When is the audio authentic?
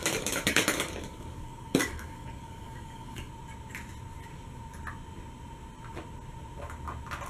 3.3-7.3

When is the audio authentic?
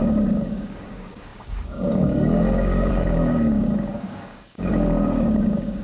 none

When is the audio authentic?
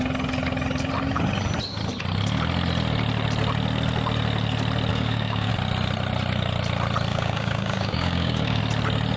0.0-4.9; 5.5-7.1; 8.6-9.2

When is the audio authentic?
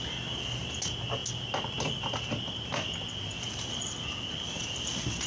0.0-5.3